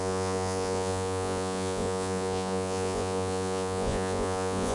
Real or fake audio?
fake